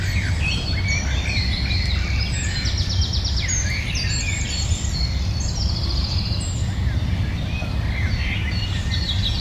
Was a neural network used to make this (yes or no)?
no